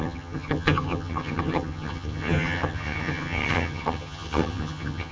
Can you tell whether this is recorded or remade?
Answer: remade